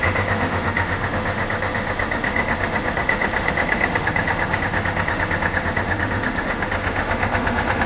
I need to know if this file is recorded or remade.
remade